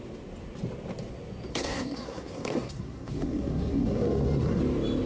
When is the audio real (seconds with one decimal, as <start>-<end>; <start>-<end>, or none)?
0.0-1.5; 4.6-5.1